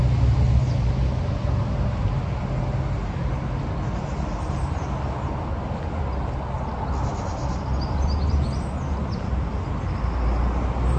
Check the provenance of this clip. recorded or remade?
recorded